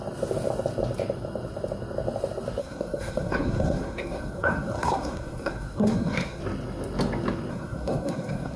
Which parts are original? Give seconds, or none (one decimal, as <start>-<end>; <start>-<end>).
0.0-2.6; 6.4-7.5